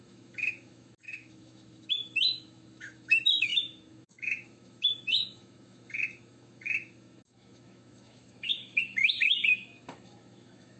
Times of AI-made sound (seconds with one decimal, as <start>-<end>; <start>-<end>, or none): 0.0-10.8